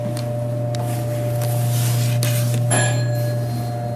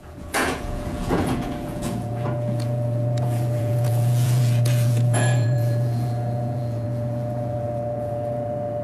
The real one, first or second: first